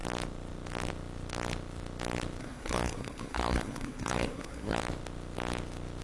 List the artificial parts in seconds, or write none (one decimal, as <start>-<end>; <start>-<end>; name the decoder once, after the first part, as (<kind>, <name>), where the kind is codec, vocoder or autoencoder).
2.4-4.8 (codec, SNAC)